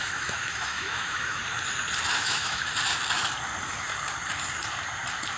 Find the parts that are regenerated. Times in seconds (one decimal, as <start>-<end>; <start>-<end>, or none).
0.0-1.4; 2.1-2.7

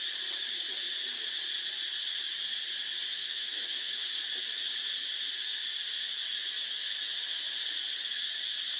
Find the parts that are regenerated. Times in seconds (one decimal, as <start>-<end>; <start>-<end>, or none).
3.1-4.1

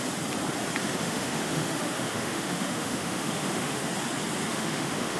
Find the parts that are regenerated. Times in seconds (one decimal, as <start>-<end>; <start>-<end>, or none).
0.8-3.9; 4.5-5.2

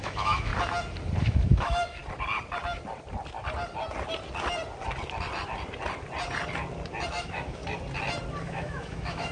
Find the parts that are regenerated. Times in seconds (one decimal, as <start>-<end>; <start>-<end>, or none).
0.0-0.5; 1.2-2.0; 7.1-7.6; 8.4-9.3